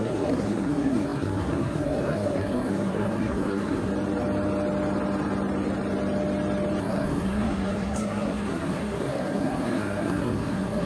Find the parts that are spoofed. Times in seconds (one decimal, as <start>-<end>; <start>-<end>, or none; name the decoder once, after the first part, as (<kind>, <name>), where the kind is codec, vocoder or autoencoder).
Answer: 0.0-3.9 (codec, SNAC); 6.8-10.9